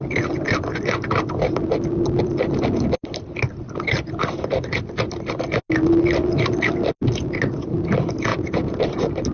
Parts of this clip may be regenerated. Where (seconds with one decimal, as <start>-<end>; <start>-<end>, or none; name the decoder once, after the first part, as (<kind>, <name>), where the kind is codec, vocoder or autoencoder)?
8.3-8.8 (vocoder, Vocos)